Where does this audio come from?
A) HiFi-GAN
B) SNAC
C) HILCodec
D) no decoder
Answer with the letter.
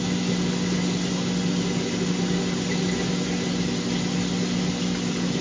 D